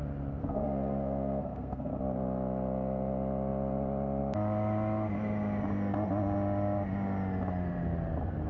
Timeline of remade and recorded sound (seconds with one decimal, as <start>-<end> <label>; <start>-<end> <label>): 0.0-0.4 recorded; 0.4-1.9 remade; 1.9-8.5 recorded